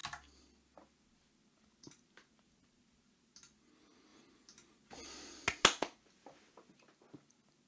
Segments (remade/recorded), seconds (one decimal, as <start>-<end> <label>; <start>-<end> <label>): 0.0-7.7 recorded